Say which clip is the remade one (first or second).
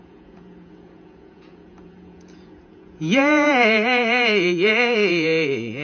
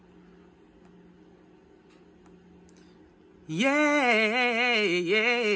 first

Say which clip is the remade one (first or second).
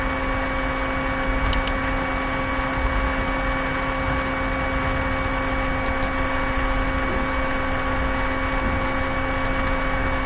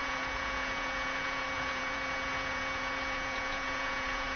second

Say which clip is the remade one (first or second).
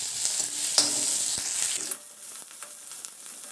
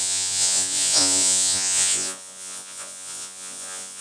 second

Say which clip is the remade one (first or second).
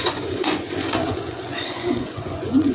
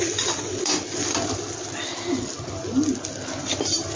first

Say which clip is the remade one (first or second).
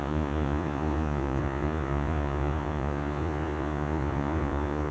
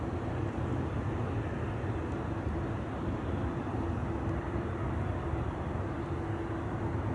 first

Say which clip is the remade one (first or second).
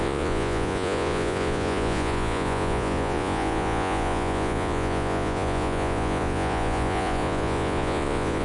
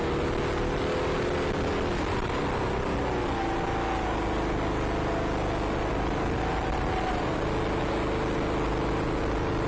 first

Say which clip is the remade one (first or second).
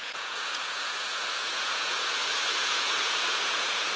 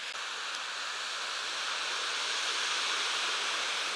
first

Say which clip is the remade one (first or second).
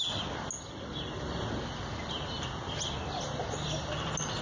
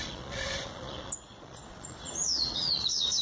second